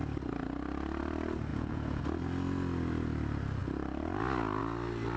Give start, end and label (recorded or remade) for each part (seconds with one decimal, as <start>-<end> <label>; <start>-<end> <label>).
0.0-1.5 recorded; 1.5-2.0 remade; 2.0-5.2 recorded